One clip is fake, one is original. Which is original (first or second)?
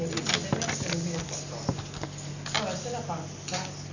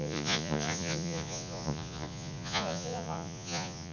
first